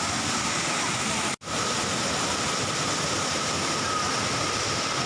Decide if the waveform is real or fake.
real